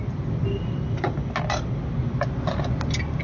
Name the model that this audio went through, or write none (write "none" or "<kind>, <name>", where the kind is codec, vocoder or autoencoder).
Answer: none